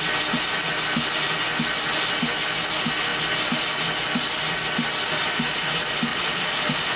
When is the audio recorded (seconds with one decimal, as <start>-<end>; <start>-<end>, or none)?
0.0-6.1